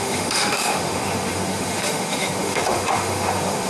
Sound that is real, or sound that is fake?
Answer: fake